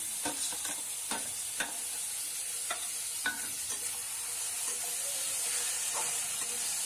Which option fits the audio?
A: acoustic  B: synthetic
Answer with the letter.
A